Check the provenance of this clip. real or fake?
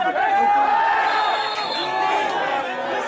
real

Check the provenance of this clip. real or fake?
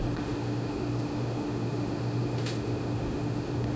fake